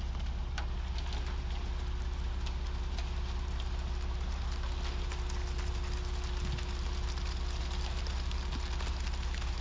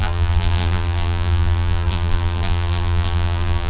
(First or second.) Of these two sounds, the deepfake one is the second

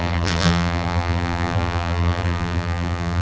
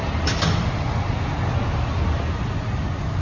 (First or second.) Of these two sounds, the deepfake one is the first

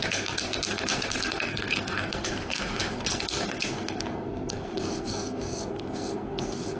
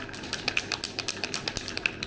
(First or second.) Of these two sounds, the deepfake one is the first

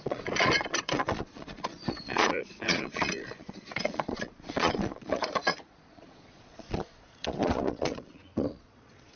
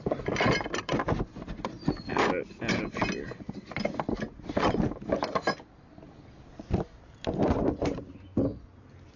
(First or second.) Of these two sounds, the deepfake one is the first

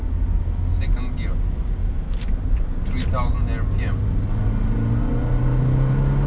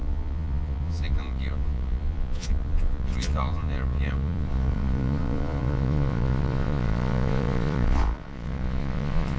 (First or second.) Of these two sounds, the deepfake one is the second